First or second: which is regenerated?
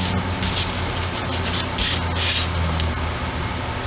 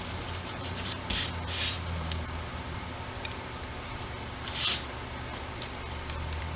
second